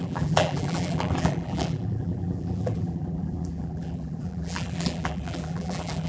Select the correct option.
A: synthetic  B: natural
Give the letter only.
A